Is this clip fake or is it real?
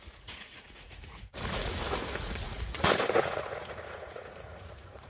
fake